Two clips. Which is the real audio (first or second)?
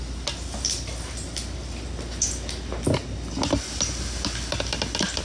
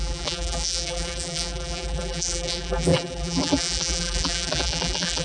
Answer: first